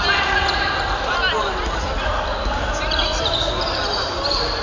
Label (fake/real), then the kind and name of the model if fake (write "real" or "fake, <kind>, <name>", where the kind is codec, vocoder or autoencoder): real